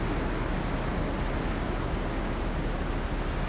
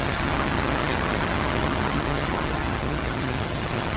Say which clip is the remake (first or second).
second